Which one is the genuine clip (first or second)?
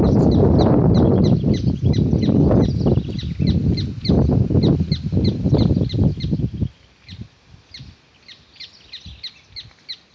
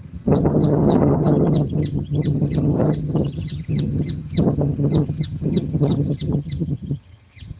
first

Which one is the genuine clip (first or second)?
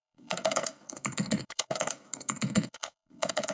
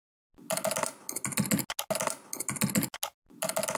second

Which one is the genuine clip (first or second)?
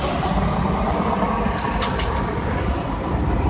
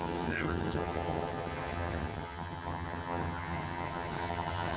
first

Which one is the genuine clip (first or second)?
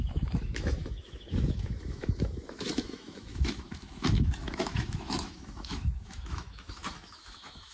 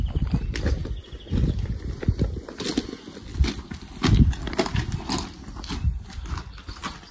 second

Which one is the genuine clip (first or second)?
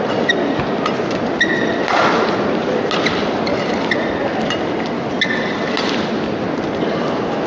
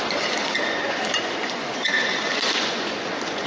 first